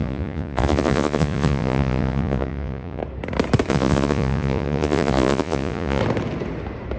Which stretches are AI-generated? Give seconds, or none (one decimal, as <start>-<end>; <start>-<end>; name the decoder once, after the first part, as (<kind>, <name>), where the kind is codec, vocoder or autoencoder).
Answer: 0.0-3.0 (vocoder, Vocos); 3.7-6.0